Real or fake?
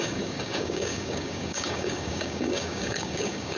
fake